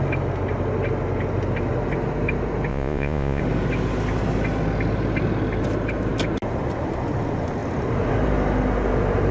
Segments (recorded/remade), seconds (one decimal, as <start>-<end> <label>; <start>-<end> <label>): 0.0-2.7 recorded; 2.7-3.4 remade; 3.4-9.3 recorded